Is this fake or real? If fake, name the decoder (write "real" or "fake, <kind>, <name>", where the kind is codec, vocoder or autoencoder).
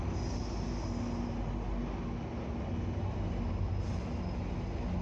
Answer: real